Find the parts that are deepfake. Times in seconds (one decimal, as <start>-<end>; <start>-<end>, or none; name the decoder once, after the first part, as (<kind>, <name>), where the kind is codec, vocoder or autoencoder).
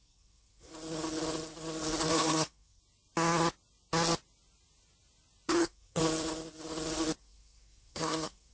0.0-0.7 (codec, SNAC); 2.1-2.8; 5.5-6.0; 7.2-8.5